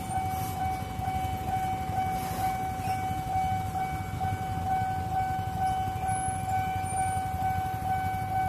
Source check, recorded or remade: recorded